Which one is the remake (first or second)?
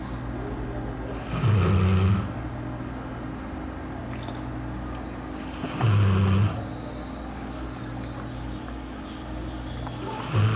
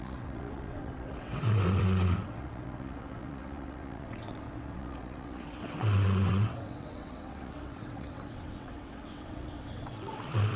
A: second